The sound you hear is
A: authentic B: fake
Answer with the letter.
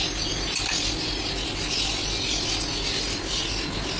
A